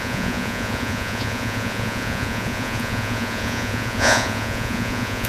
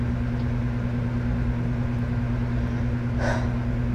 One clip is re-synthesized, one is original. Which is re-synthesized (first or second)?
first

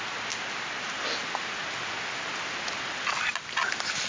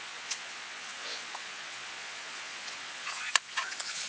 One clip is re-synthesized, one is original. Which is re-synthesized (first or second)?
second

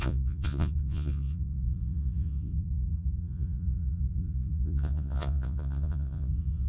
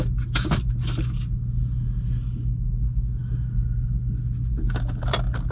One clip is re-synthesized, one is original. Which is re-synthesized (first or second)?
first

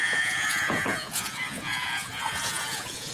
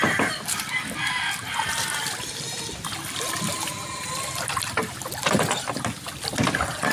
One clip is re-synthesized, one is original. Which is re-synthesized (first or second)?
first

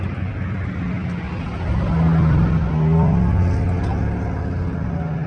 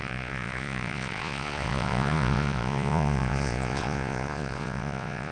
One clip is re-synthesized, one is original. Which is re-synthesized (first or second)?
second